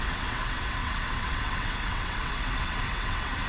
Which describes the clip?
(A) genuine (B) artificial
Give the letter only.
B